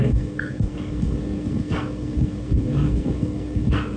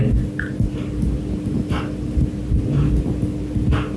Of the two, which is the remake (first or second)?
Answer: first